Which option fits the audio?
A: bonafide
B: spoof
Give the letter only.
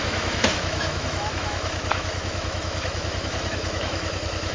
B